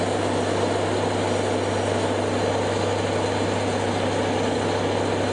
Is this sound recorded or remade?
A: recorded